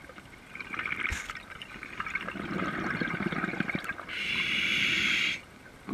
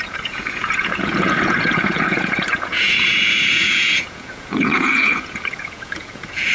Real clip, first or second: first